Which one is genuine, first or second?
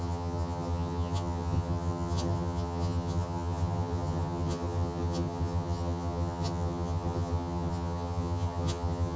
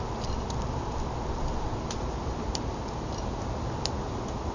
second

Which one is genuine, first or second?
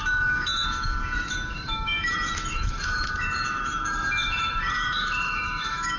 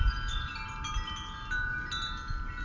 second